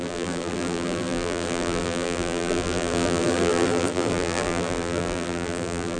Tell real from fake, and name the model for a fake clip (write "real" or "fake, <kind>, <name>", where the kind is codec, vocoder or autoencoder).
fake, vocoder, BigVGAN v2